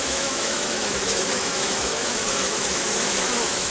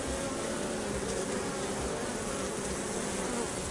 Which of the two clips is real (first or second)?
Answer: second